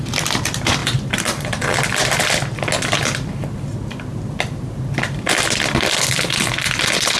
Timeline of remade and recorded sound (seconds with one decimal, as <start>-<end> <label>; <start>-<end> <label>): 0.0-7.2 recorded